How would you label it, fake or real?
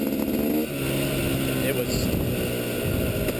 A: real